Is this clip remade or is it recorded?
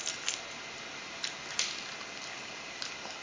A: recorded